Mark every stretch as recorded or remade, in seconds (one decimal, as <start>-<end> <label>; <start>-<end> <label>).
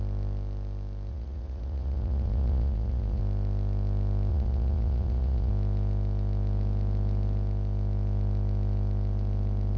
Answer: 0.0-1.1 recorded; 1.1-3.2 remade; 3.2-4.3 recorded; 4.3-5.5 remade; 5.5-9.8 recorded